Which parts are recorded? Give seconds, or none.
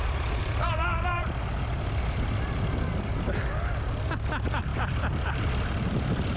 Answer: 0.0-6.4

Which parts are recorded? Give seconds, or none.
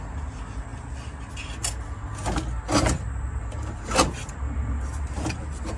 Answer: 0.0-5.8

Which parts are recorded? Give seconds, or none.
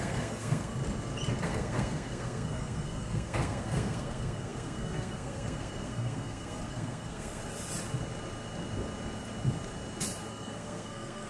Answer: 0.7-1.4; 7.4-10.3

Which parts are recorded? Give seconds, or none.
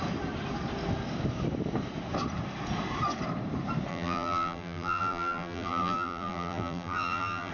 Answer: 0.0-3.9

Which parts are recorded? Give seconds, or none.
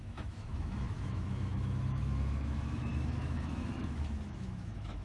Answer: none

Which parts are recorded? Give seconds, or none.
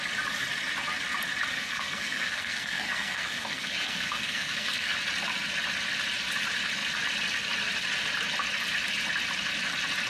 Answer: 0.0-1.5; 4.9-10.1